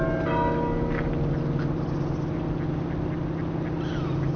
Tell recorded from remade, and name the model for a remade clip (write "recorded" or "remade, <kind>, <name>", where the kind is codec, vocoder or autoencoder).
recorded